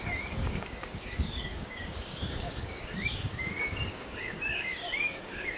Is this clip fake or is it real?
fake